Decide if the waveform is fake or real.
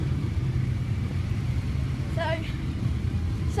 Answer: fake